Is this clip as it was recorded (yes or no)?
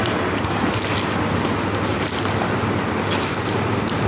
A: yes